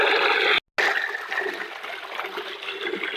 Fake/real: real